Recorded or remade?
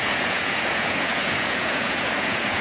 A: remade